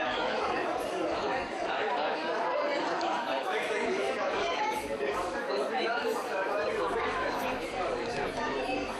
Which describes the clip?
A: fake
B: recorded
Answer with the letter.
A